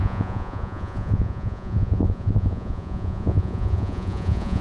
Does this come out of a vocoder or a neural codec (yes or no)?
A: yes